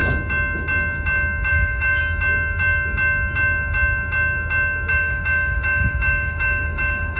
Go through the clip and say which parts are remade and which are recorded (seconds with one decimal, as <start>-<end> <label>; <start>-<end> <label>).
0.0-1.5 recorded; 1.5-2.0 remade; 2.0-4.9 recorded; 4.9-7.2 remade